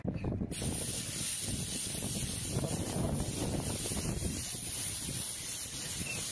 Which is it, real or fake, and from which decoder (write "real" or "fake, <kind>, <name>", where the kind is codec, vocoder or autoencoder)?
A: real